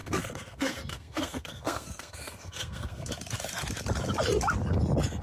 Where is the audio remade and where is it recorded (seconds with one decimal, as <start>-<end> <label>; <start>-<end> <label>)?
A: 0.0-3.1 remade; 3.1-5.2 recorded